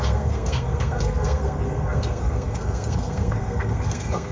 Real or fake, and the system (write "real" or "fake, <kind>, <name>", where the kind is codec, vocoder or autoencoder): fake, codec, SNAC